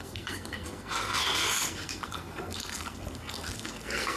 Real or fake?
fake